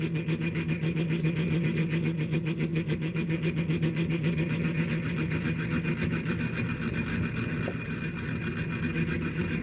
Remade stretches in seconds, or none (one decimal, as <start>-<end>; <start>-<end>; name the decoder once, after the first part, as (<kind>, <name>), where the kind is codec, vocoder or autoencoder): 2.7-3.6 (vocoder, BigVGAN v2)